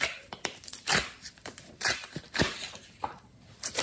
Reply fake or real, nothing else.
fake